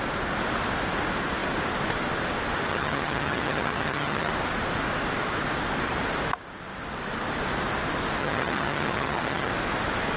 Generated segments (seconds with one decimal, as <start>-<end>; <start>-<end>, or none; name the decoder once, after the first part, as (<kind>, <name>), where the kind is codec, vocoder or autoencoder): 2.7-4.3 (vocoder, HiFi-GAN); 8.2-9.5